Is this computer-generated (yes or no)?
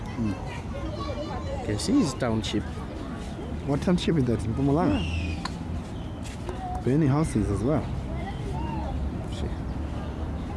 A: no